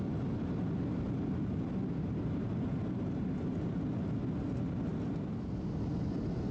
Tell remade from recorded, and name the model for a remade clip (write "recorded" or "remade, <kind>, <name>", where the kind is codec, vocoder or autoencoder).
recorded